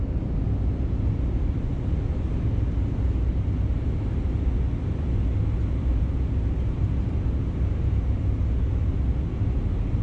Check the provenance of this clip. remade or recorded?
recorded